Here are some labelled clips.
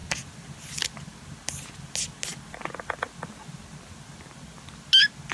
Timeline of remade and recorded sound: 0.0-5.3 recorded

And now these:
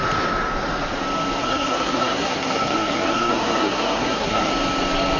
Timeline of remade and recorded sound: 0.0-1.4 recorded; 1.4-4.5 remade; 4.5-5.2 recorded

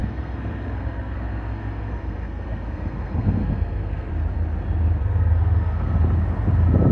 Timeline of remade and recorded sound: 0.0-4.1 remade; 4.1-5.0 recorded; 5.0-5.9 remade; 5.9-6.9 recorded

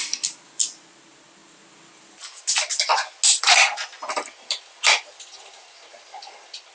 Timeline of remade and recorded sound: 0.0-6.7 recorded

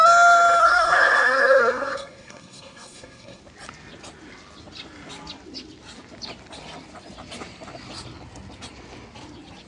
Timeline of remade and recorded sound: 0.0-0.6 recorded; 0.6-3.4 remade; 3.4-9.7 recorded

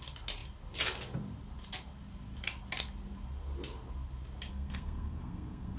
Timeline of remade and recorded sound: 0.0-4.5 recorded; 4.5-5.8 remade

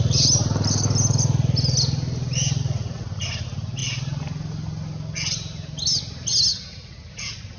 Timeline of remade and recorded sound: 0.0-7.6 recorded